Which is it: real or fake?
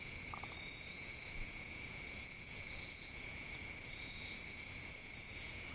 fake